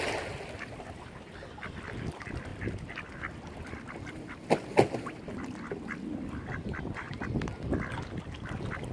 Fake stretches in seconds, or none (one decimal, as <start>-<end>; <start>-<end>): none